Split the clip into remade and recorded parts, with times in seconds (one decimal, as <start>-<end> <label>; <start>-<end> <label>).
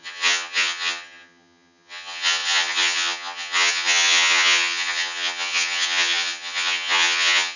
0.0-7.6 remade